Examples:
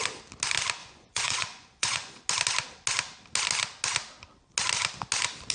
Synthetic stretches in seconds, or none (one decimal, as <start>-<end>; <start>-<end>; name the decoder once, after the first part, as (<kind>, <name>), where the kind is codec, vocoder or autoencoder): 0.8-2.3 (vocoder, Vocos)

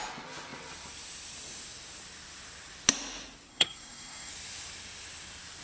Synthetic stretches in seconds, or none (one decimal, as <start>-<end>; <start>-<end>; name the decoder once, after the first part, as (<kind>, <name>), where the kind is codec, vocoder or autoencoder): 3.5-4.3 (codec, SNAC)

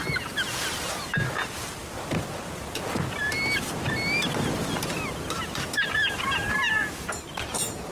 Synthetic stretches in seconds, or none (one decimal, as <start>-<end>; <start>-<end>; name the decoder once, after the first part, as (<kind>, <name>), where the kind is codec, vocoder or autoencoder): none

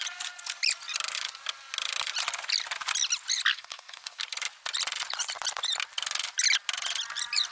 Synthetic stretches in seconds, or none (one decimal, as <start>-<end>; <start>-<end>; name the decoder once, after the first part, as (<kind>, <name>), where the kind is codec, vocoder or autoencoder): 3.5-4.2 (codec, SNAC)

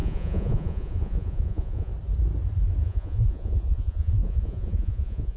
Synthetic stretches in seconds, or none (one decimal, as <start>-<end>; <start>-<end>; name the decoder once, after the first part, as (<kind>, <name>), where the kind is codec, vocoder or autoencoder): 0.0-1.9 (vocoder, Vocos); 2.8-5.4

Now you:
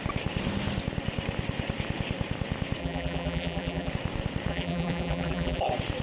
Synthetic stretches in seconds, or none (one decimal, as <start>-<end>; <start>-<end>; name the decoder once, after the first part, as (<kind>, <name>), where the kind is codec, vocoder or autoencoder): 2.8-3.9 (vocoder, BigVGAN v2); 4.5-5.6

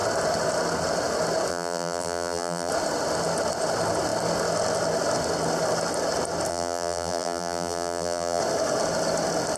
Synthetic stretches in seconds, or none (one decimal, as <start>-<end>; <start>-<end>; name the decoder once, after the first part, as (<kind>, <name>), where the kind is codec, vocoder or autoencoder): 1.5-2.7 (vocoder, BigVGAN v2); 6.5-8.4

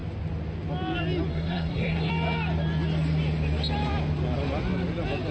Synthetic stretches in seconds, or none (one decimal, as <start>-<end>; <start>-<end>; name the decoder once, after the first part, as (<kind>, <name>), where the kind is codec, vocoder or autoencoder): 1.3-2.1 (codec, SNAC)